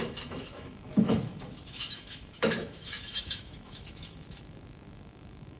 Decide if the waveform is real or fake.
fake